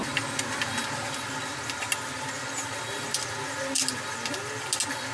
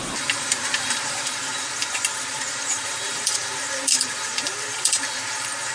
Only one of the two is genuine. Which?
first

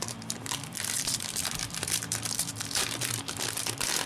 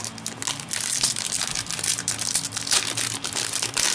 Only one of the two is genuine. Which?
second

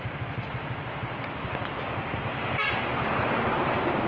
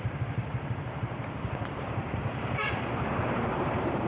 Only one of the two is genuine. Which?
first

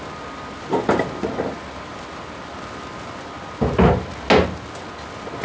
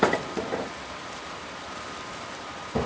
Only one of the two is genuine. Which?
first